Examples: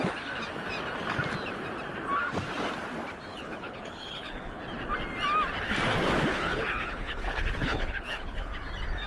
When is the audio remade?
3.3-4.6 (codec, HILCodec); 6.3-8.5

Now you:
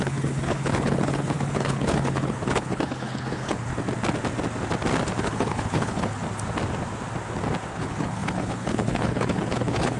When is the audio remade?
0.0-3.7 (codec, HILCodec); 5.2-6.2; 7.7-10.0

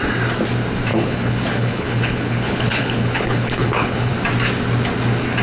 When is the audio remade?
0.9-4.1 (codec, HILCodec)

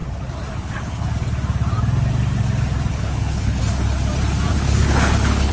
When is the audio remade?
0.5-1.1 (codec, HILCodec); 2.9-3.6; 4.5-5.5